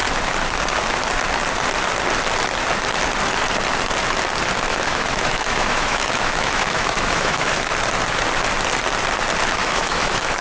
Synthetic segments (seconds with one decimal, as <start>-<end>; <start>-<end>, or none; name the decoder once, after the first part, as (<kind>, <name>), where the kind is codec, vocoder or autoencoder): 4.7-7.7 (autoencoder, DAC-VAE); 9.6-10.4